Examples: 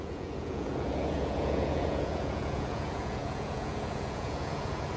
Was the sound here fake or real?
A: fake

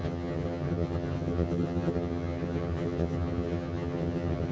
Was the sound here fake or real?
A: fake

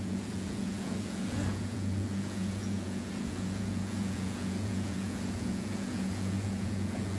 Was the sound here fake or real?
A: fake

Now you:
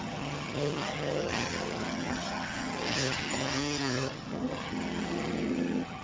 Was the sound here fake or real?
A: fake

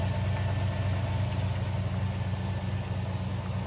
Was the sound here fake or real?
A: real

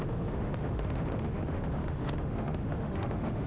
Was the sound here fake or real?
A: fake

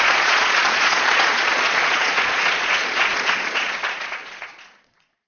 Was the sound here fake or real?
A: fake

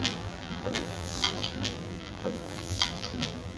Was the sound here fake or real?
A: fake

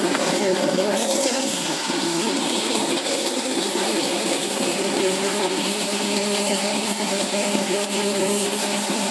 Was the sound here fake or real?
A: fake